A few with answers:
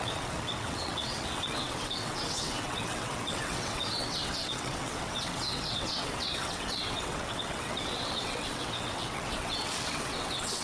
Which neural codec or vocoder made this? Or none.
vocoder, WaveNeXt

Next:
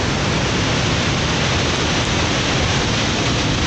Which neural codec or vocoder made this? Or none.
none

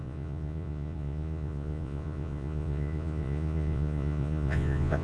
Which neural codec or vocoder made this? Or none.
vocoder, Vocos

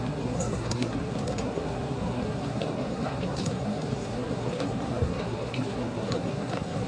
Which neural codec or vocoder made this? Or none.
codec, SNAC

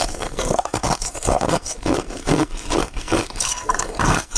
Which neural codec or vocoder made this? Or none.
codec, SNAC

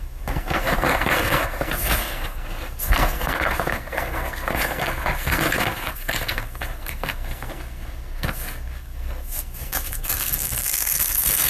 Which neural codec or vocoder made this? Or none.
codec, SNAC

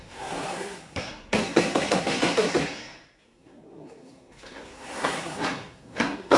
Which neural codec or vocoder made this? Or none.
codec, SNAC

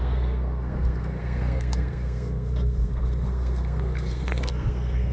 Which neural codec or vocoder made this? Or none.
codec, SNAC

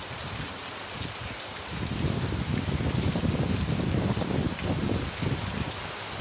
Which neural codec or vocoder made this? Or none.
none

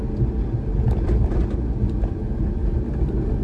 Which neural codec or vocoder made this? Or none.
none